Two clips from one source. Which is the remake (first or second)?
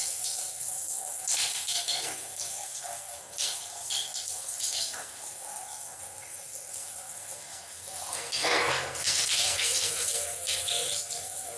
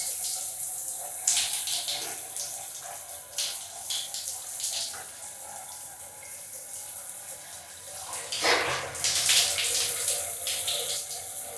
first